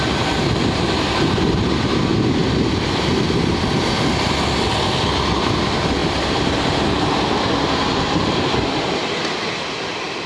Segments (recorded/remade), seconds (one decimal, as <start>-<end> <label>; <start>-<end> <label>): 0.0-2.4 recorded; 2.4-4.6 remade; 4.6-6.0 recorded; 6.0-6.7 remade; 6.7-10.3 recorded